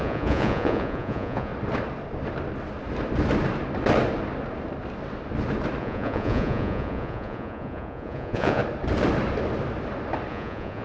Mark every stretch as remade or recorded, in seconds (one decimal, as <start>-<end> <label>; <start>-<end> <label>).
0.0-1.5 remade; 1.5-5.8 recorded; 5.8-8.6 remade; 8.6-10.3 recorded; 10.3-10.8 remade